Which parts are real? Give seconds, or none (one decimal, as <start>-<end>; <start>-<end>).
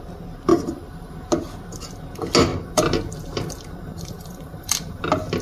0.0-0.5; 1.1-3.9; 5.0-5.4